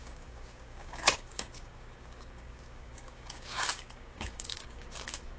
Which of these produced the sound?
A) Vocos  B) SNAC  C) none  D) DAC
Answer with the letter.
D